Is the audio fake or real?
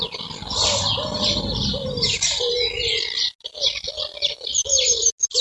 real